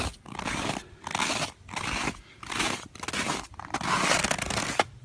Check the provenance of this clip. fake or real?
real